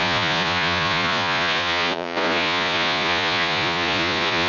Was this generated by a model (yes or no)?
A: yes